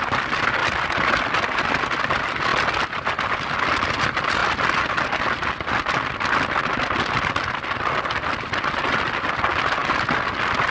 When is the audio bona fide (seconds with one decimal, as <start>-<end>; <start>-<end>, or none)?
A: 0.0-10.7